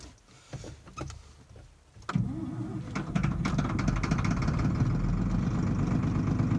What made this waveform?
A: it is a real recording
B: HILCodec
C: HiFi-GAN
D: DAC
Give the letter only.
A